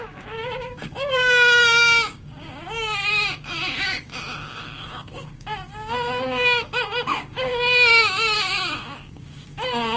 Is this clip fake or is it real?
fake